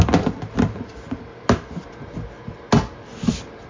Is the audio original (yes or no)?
yes